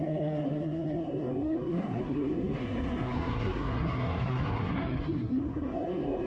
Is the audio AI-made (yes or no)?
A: yes